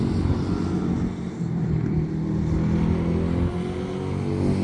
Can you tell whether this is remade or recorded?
recorded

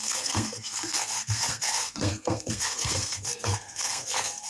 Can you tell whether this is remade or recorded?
remade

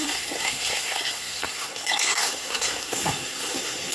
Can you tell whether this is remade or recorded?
remade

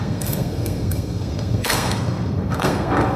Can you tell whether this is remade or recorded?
remade